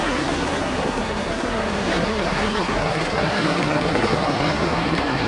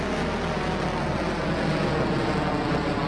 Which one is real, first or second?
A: second